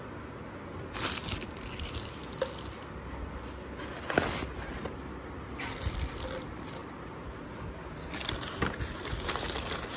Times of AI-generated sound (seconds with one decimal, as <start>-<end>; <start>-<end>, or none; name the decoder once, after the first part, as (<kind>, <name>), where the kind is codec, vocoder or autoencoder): none